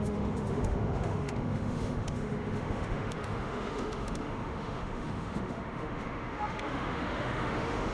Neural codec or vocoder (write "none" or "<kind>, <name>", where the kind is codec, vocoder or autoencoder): autoencoder, DAC-VAE